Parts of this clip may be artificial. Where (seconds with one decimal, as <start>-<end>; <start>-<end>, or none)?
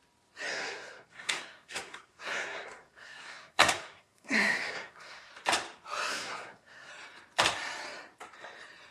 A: 0.5-5.3; 6.1-6.9